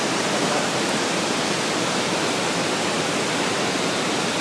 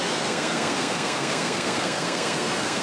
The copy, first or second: second